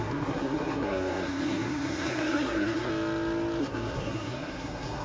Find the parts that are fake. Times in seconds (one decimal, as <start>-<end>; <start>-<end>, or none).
0.0-2.9; 3.6-5.0